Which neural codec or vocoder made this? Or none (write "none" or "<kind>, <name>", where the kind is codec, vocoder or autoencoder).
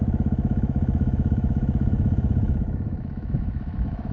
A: autoencoder, DAC-VAE